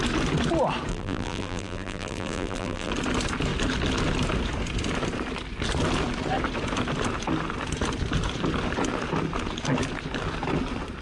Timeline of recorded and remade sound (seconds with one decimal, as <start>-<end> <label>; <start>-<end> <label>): 0.0-0.9 recorded; 0.9-2.9 remade; 2.9-11.0 recorded